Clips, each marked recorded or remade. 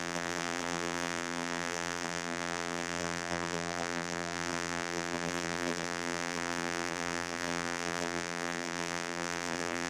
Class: remade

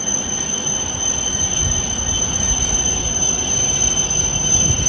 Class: recorded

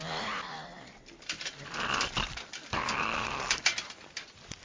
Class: remade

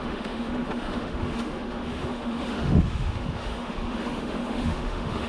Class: remade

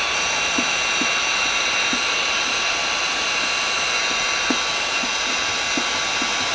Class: recorded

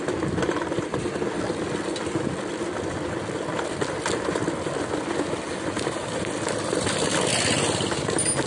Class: recorded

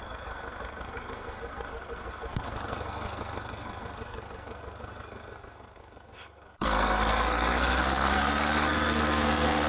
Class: remade